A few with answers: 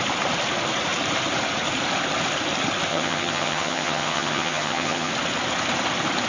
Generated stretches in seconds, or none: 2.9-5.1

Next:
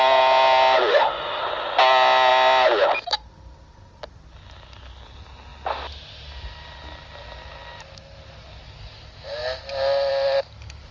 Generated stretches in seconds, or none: 0.9-1.4